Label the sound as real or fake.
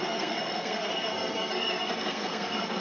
fake